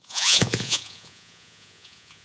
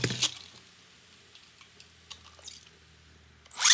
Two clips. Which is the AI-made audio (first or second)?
first